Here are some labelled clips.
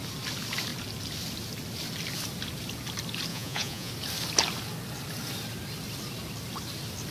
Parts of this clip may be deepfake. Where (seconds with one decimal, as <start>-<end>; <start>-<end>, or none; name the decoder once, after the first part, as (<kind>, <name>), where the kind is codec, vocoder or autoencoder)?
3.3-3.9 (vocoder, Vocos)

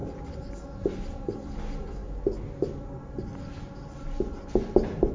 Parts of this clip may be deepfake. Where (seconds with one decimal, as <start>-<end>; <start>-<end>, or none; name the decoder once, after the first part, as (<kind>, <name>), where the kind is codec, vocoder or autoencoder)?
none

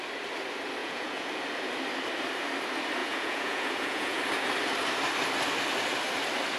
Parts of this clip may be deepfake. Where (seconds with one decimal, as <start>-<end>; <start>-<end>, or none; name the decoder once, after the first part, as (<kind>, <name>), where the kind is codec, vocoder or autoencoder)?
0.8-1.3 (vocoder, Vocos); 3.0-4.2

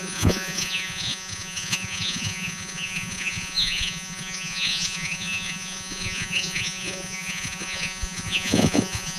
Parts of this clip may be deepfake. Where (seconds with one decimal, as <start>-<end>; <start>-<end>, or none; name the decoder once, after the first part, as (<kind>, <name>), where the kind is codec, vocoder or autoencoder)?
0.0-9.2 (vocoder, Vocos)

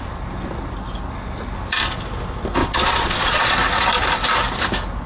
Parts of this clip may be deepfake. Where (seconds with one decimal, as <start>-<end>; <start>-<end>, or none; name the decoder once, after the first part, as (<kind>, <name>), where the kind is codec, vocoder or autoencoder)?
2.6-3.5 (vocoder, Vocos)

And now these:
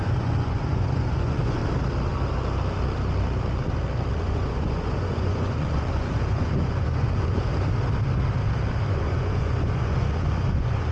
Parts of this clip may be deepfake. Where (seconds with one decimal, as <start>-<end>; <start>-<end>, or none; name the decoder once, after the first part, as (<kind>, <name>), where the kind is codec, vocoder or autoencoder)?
0.0-1.6 (vocoder, Vocos); 4.1-7.5; 8.9-10.9